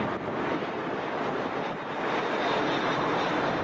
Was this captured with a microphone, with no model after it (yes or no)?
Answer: yes